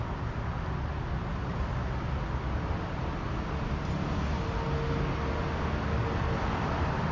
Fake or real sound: real